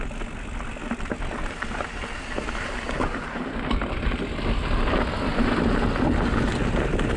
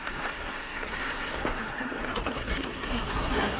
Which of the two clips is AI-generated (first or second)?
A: second